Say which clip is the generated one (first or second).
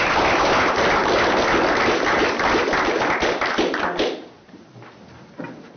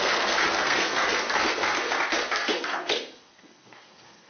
second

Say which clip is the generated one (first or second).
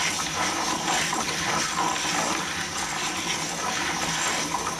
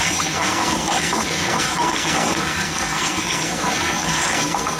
second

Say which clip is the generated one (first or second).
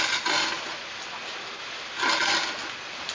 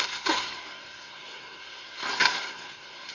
second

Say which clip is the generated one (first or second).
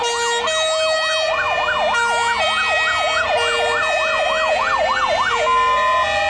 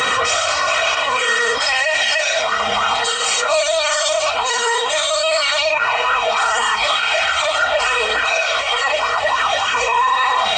second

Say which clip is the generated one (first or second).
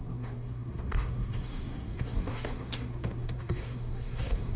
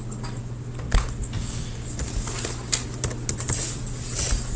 first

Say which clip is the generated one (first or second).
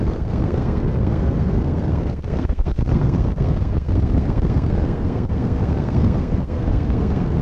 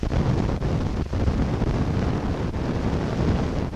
first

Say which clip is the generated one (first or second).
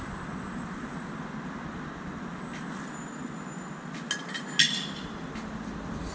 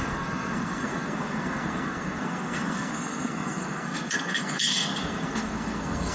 second